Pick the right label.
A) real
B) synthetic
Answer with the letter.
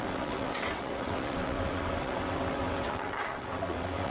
B